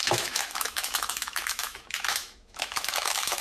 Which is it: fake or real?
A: fake